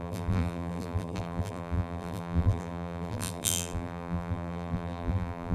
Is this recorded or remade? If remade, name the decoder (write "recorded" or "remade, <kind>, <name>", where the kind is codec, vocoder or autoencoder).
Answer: remade, vocoder, BigVGAN v2